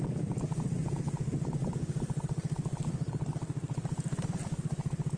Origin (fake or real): real